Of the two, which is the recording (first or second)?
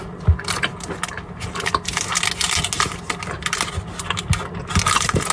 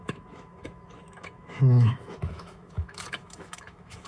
first